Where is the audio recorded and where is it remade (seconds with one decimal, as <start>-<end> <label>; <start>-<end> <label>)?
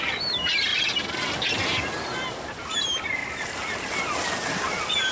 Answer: 0.0-0.7 remade; 0.7-2.3 recorded; 2.3-3.2 remade; 3.2-5.1 recorded